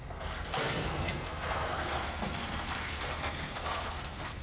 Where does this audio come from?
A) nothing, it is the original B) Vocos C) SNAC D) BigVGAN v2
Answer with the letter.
C